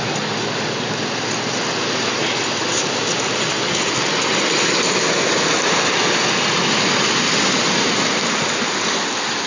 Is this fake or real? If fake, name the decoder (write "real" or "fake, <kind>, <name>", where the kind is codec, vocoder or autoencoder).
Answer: real